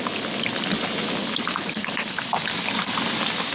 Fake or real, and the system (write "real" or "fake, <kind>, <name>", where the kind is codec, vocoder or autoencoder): real